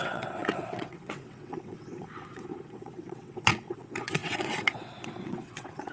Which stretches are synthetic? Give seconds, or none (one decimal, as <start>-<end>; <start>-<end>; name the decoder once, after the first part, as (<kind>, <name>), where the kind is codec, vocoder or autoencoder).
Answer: 0.0-5.9 (vocoder, WaveNeXt)